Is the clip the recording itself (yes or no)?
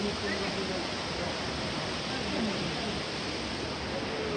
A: yes